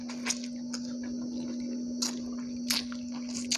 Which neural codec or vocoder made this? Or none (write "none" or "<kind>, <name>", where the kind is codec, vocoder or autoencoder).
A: none